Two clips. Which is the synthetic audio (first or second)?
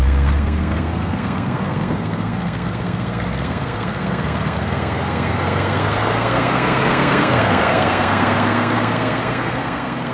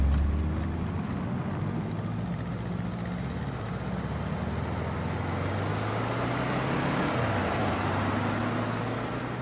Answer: first